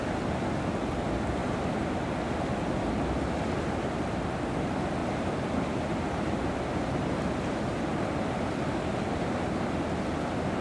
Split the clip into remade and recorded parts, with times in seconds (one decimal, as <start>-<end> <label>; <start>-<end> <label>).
0.0-5.0 recorded; 5.0-8.9 remade; 8.9-10.6 recorded

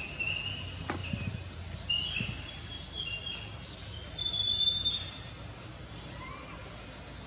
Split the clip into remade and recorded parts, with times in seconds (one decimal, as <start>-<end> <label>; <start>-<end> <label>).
0.0-1.0 recorded; 1.0-1.9 remade; 1.9-4.7 recorded; 4.7-6.6 remade; 6.6-7.3 recorded

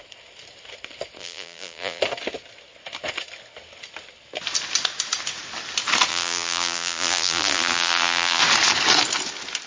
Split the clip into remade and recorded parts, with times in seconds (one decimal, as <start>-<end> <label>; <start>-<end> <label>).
0.0-1.2 recorded; 1.2-2.0 remade; 2.0-6.1 recorded; 6.1-8.4 remade; 8.4-9.7 recorded

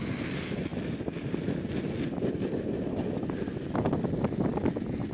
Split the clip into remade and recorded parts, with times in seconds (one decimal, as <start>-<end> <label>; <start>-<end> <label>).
0.0-5.1 recorded

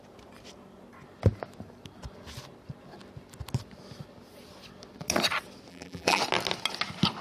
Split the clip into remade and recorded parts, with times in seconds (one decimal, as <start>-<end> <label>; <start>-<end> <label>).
0.0-5.7 recorded; 5.7-6.2 remade; 6.2-7.2 recorded

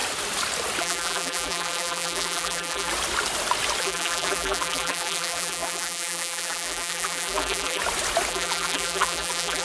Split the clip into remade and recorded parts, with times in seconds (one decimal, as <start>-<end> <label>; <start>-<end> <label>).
0.0-0.8 recorded; 0.8-2.9 remade; 2.9-3.8 recorded; 3.8-7.8 remade; 7.8-8.3 recorded; 8.3-9.6 remade

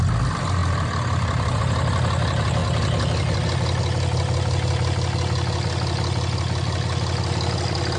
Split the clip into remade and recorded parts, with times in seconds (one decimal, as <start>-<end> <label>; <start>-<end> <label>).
0.0-8.0 recorded